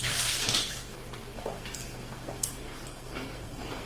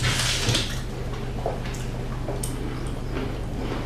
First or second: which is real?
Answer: second